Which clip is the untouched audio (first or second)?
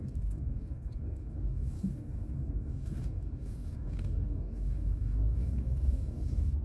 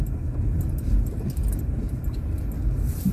second